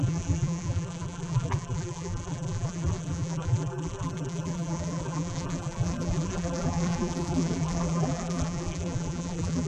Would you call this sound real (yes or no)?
no